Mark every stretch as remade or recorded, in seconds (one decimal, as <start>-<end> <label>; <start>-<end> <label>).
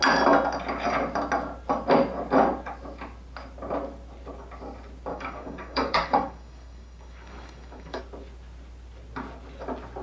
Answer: 0.0-5.1 recorded; 5.1-8.0 remade; 8.0-10.0 recorded